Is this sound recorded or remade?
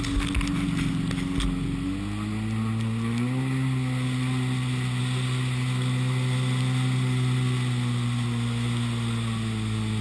recorded